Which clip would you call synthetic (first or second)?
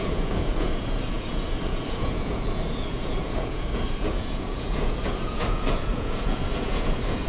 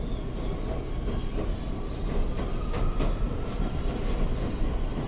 first